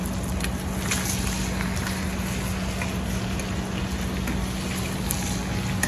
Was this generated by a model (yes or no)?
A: no